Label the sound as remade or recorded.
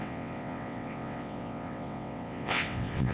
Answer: remade